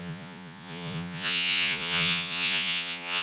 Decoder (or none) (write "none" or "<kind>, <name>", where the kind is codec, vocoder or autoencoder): vocoder, Vocos